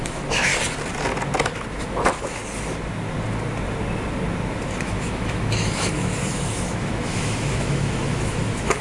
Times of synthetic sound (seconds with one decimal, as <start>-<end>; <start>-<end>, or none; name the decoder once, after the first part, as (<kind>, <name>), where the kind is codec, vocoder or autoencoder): 0.0-0.5 (autoencoder, DAC-VAE); 1.7-2.4; 4.8-8.8